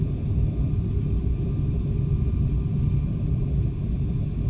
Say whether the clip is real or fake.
real